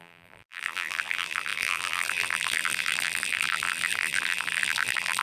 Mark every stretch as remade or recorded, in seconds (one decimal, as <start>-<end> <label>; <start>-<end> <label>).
0.0-5.2 remade